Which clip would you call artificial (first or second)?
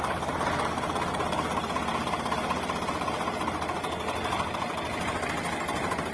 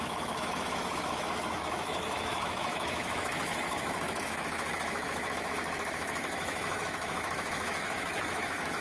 second